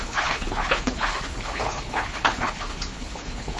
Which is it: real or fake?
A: fake